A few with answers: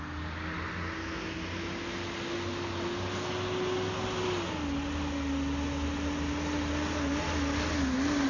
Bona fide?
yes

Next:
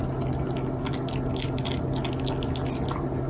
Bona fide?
yes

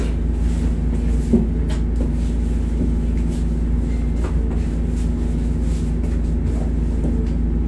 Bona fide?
yes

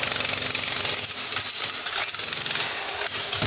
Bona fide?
yes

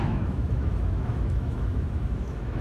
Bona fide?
no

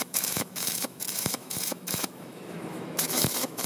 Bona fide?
no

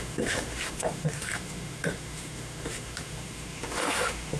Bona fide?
no